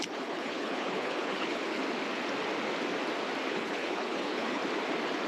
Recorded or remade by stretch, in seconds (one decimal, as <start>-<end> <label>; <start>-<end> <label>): 0.0-1.8 remade; 1.8-3.5 recorded; 3.5-4.6 remade; 4.6-5.3 recorded